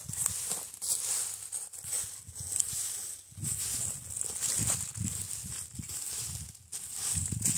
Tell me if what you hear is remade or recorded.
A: recorded